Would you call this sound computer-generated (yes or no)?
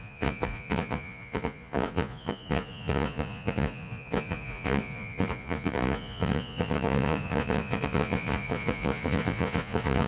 yes